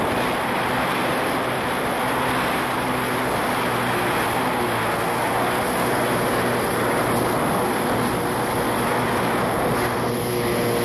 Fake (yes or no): no